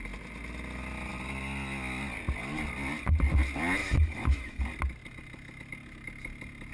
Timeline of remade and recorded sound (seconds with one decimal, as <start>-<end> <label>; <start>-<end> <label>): 0.0-3.8 recorded; 3.8-4.6 remade; 4.6-6.7 recorded